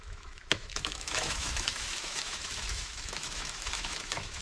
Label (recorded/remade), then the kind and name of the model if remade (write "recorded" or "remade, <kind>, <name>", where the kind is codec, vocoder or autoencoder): remade, autoencoder, DAC-VAE